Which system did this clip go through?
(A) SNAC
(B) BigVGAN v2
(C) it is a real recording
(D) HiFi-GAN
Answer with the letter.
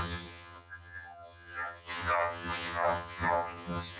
D